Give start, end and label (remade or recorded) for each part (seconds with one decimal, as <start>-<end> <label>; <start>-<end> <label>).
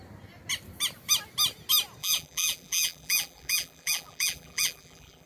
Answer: 0.0-2.0 recorded; 2.0-5.3 remade